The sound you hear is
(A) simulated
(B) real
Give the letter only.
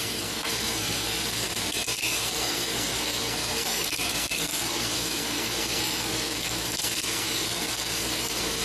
A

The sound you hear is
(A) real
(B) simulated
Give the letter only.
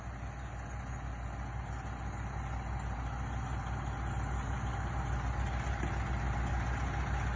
A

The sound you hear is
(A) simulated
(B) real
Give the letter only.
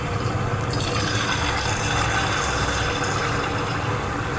B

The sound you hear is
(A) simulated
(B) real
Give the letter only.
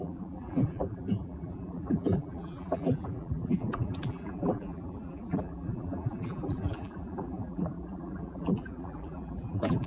A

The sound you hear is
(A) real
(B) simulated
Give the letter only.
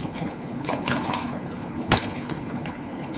B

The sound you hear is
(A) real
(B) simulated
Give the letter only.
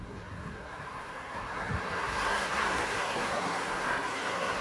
B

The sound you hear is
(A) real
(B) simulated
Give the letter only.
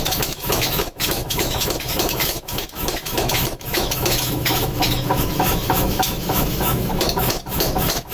B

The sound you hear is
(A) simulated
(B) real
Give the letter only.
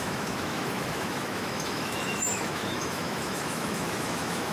A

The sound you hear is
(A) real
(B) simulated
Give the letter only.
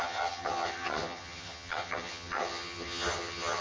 B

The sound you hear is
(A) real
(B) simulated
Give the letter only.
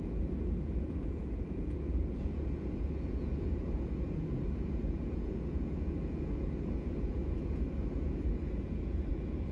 B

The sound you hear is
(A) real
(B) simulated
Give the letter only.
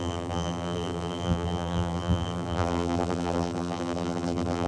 B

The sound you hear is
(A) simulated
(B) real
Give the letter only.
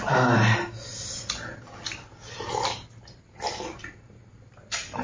B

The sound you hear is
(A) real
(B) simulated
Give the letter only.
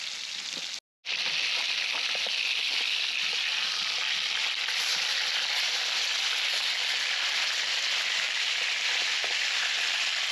A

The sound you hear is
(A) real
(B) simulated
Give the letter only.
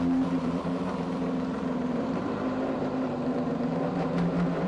B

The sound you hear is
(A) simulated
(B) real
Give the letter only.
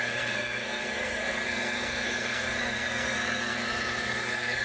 A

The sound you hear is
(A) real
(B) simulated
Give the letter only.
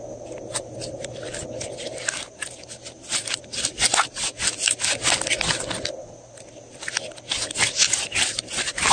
A